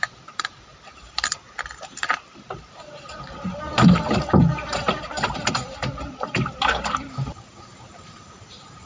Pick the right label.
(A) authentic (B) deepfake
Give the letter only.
B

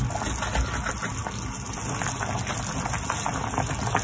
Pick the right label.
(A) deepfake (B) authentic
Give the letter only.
B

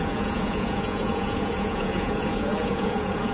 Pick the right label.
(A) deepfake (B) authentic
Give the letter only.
A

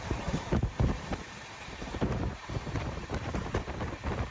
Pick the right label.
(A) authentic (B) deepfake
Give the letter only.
B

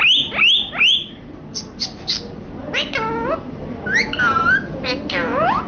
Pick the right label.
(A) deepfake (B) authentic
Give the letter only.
B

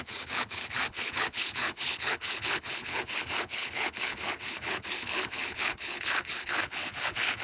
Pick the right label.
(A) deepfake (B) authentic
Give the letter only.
A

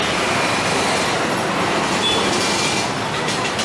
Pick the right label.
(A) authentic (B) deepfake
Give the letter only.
A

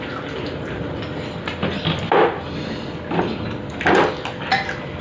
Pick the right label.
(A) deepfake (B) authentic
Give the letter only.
B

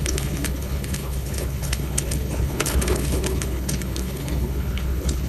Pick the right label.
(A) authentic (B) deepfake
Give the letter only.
B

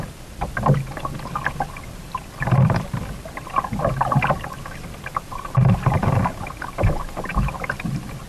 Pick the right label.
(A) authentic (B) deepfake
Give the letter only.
A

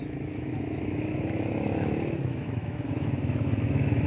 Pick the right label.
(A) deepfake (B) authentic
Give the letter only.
A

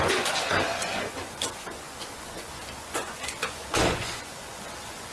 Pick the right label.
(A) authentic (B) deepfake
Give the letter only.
B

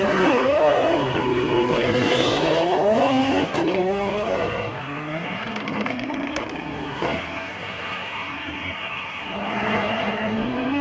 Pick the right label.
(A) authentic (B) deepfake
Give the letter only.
B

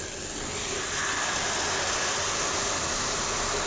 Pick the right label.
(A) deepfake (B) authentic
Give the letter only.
B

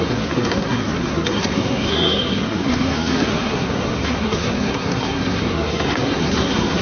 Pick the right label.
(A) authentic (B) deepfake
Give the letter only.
B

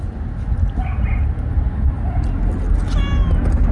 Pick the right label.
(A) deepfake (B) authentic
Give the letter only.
B